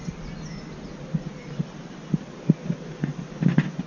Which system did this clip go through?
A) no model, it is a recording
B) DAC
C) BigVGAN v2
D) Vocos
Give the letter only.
A